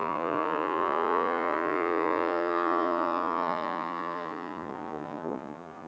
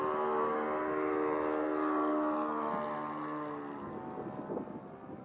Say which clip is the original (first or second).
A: second